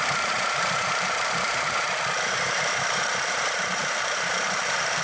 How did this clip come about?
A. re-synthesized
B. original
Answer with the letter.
A